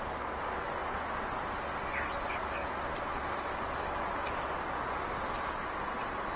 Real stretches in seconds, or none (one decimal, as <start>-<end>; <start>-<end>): 0.0-6.4